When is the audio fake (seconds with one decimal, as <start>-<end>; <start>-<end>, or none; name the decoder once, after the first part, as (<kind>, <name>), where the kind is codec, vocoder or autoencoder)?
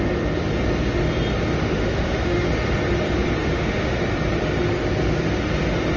1.6-2.5 (autoencoder, DAC-VAE); 3.4-4.0